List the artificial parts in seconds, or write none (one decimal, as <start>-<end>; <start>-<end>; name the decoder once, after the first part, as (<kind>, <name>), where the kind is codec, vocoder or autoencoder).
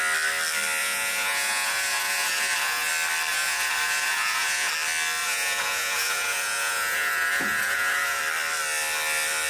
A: 0.8-2.9 (vocoder, Vocos); 3.3-4.7; 5.2-8.2